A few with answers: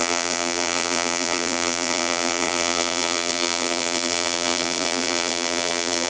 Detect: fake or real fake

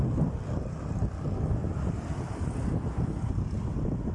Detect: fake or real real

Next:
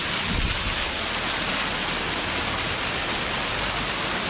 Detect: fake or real real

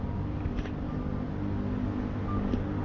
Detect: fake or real real